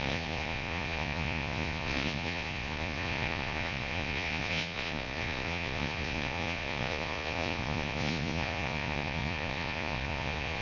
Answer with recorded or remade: remade